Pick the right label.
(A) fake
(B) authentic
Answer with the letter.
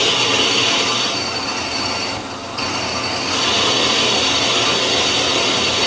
B